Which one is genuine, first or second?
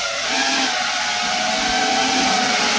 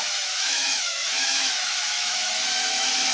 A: first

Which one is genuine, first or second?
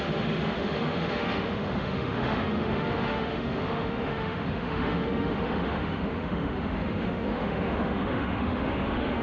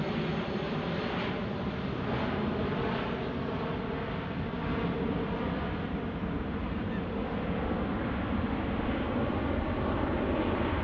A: second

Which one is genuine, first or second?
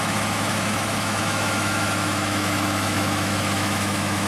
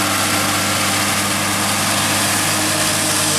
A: second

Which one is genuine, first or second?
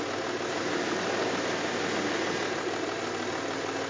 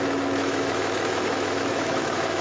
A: first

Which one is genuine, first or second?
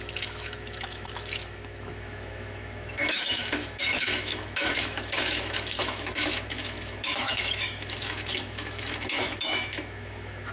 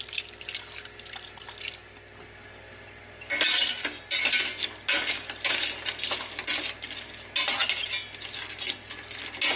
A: second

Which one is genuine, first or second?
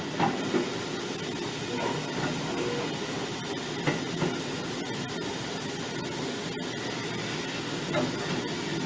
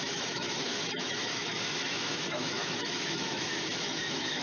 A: first